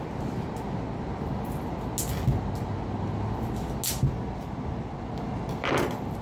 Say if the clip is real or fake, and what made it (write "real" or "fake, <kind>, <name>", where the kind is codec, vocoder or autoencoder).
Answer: real